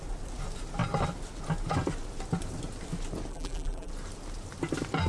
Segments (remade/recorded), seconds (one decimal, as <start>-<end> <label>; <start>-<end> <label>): 0.0-3.3 recorded; 3.3-3.9 remade; 3.9-5.1 recorded